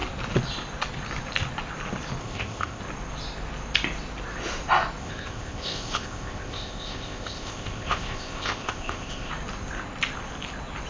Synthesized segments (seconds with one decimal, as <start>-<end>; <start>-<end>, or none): 2.2-2.8; 5.0-9.3